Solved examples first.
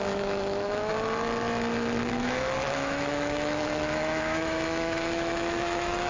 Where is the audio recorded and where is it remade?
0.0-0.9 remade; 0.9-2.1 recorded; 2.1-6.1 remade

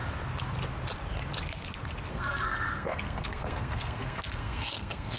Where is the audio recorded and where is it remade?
0.0-2.1 recorded; 2.1-5.2 remade

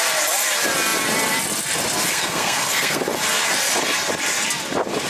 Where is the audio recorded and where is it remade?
0.0-2.1 recorded; 2.1-3.0 remade; 3.0-5.1 recorded

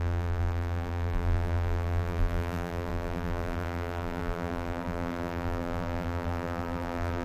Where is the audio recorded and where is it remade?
0.0-7.2 remade

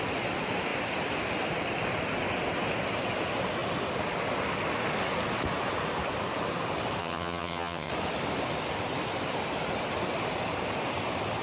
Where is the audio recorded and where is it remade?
0.0-7.0 recorded; 7.0-7.9 remade; 7.9-11.4 recorded

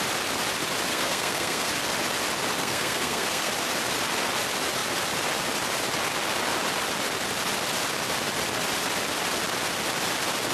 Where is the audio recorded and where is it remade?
0.0-0.9 recorded; 0.9-1.7 remade; 1.7-2.6 recorded; 2.6-3.5 remade; 3.5-10.5 recorded

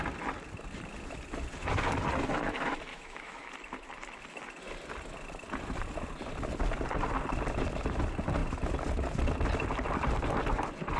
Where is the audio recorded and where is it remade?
0.0-2.9 recorded; 2.9-3.5 remade; 3.5-11.0 recorded